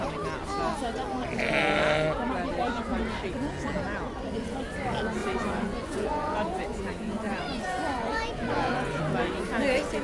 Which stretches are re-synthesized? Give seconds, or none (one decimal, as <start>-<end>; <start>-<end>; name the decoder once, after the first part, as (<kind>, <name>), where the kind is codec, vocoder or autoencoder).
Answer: 5.2-9.0 (vocoder, Vocos)